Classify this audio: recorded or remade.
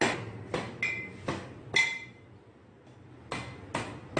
recorded